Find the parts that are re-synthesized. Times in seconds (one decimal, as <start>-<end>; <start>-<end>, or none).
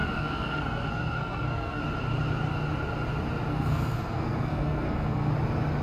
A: 0.0-1.8; 3.5-5.3